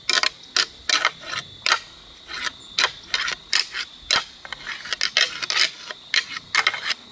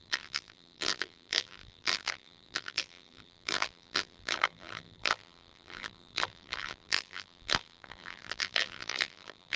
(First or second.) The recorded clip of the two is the first